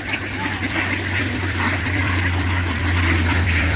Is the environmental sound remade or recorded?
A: remade